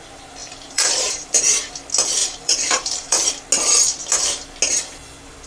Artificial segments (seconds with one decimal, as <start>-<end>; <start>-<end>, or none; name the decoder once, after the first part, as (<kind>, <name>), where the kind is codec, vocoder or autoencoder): 0.4-1.7 (vocoder, BigVGAN v2); 2.2-3.3